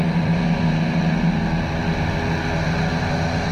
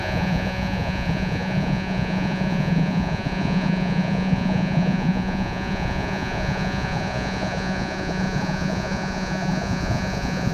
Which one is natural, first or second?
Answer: first